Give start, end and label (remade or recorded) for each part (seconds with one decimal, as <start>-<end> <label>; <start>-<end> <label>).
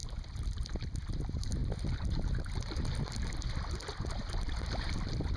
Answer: 0.0-5.4 recorded